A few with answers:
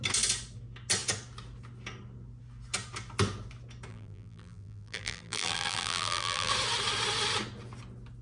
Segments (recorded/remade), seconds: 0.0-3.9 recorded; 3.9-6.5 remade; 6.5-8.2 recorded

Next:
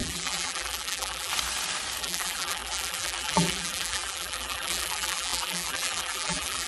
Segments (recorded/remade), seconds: 0.0-1.3 remade; 1.3-2.0 recorded; 2.0-6.7 remade

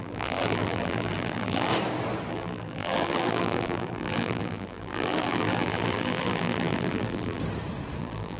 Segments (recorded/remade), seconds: 0.0-1.7 remade; 1.7-2.3 recorded; 2.3-7.4 remade; 7.4-8.0 recorded; 8.0-8.4 remade

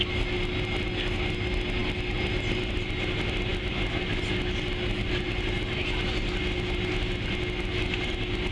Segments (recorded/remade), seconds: 0.0-8.5 recorded